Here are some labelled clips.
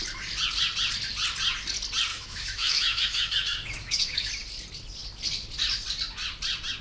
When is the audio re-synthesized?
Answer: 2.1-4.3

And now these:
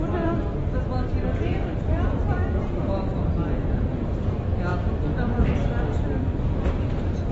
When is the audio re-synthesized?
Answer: none

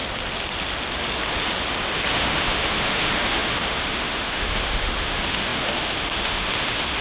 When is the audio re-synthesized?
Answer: 2.1-7.0

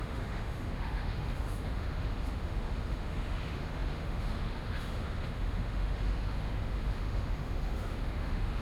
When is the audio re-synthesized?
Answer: 0.0-8.6

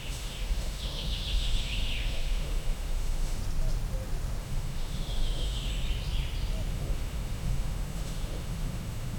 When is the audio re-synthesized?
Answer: 0.0-3.4; 4.4-5.7; 6.7-9.2